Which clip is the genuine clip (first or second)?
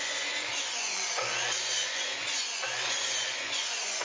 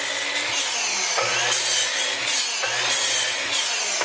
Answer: second